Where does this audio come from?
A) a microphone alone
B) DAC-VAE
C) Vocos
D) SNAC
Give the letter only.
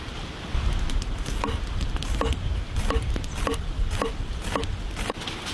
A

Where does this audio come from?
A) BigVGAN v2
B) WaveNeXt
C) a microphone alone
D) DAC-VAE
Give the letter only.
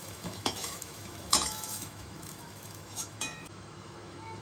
D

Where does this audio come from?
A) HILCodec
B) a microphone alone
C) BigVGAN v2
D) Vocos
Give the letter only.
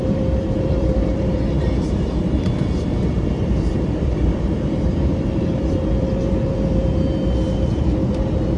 C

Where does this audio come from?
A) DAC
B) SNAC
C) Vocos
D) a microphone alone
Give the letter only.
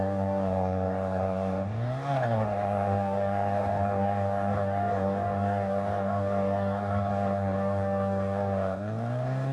A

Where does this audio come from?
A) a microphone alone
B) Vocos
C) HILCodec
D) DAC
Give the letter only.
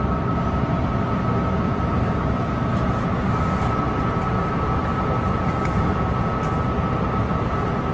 A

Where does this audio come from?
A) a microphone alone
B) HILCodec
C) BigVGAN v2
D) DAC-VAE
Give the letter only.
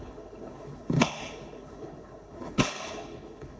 B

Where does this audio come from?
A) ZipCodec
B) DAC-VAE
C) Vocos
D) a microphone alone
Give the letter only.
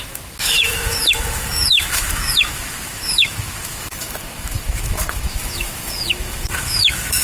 B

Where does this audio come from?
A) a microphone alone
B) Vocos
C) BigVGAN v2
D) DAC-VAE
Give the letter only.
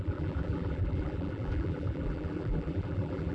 C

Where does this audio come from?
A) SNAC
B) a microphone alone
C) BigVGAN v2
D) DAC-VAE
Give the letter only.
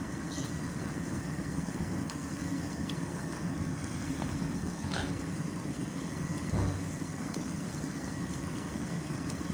A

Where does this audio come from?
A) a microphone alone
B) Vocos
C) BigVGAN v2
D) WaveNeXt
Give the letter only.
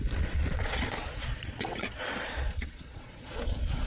B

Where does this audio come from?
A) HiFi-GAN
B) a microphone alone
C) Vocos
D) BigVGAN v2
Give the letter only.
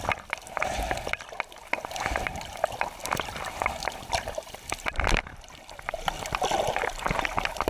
B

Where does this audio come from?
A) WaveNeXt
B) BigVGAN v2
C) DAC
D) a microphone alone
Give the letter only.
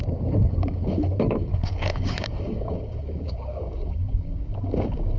C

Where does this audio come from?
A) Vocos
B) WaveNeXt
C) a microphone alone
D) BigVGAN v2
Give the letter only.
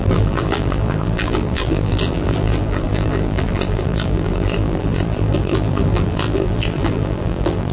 D